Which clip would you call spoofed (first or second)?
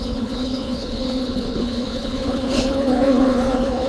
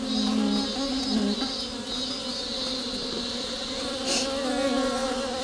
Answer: first